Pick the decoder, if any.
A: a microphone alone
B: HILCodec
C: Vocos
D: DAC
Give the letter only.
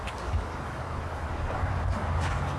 D